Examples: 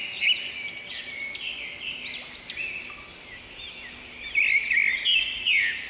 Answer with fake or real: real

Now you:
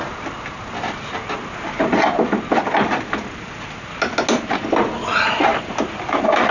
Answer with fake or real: real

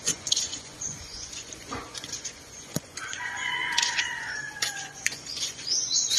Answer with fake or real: fake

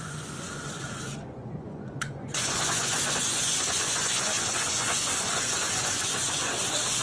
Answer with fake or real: fake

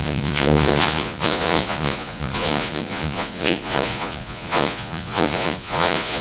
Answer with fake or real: fake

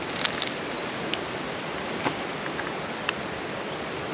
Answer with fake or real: real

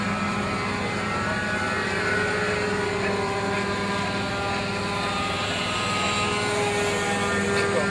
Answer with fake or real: real